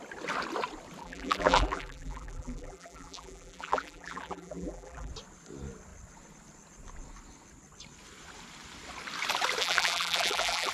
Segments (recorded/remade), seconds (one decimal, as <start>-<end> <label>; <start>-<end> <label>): 0.0-1.0 recorded; 1.0-5.1 remade; 5.1-9.6 recorded; 9.6-10.7 remade